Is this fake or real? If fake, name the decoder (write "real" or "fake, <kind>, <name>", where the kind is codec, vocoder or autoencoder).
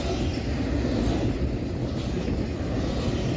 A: real